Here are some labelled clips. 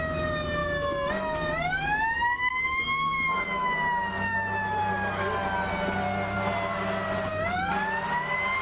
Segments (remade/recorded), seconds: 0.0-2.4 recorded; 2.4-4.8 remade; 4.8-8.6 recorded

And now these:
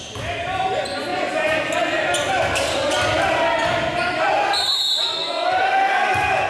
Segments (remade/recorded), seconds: 0.0-6.5 recorded

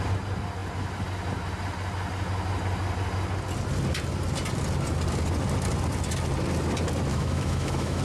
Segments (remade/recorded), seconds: 0.0-7.1 recorded; 7.1-8.0 remade